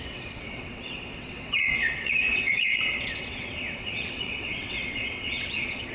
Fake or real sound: fake